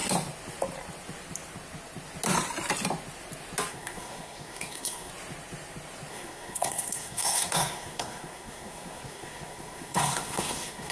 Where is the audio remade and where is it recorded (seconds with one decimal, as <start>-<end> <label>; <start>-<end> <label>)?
0.0-3.7 recorded; 3.7-5.1 remade; 5.1-6.1 recorded; 6.1-10.9 remade